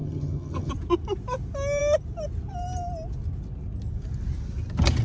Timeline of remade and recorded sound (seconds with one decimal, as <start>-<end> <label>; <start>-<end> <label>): 0.0-0.7 remade; 0.7-5.0 recorded